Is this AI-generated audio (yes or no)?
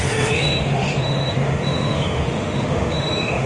yes